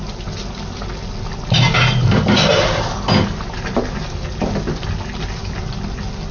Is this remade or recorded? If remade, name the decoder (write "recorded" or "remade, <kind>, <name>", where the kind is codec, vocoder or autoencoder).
recorded